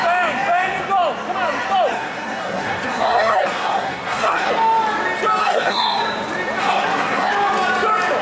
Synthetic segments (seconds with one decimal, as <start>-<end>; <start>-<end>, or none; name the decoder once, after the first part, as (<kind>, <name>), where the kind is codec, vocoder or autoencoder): 1.9-4.5 (codec, SNAC); 5.4-6.0; 6.6-7.3